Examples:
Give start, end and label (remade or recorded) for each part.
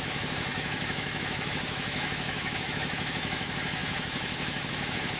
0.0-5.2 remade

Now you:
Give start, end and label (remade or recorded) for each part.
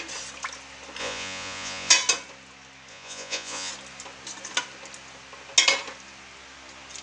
0.0-1.0 recorded; 1.0-1.9 remade; 1.9-2.9 recorded; 2.9-3.7 remade; 3.7-7.0 recorded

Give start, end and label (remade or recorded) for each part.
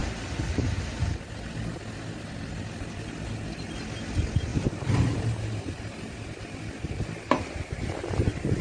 0.0-4.5 recorded; 4.5-5.2 remade; 5.2-8.6 recorded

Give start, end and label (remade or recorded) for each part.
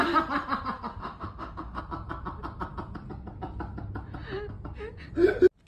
0.0-1.0 recorded; 1.0-1.8 remade; 1.8-5.7 recorded